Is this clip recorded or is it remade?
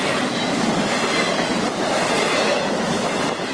recorded